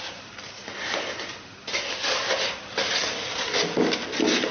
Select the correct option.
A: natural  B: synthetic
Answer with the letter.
A